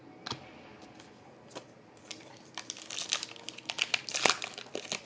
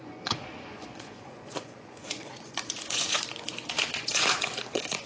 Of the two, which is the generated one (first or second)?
second